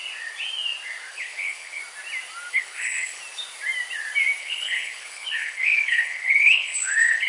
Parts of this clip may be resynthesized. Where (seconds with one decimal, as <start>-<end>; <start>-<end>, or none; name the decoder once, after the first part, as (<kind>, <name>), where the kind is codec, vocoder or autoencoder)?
1.1-1.8 (codec, HILCodec); 2.5-3.2; 4.4-7.3